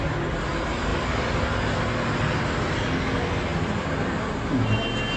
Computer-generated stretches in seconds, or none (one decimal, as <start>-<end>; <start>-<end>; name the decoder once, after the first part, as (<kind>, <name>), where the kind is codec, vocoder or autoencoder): 0.9-1.8 (vocoder, BigVGAN v2)